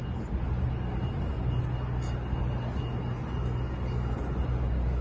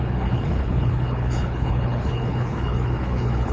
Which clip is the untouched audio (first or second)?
first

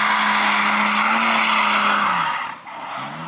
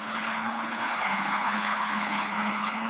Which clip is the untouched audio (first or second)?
first